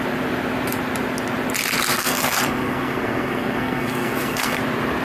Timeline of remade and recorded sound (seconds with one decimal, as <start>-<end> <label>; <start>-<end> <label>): 0.0-1.9 recorded; 1.9-4.6 remade; 4.6-5.0 recorded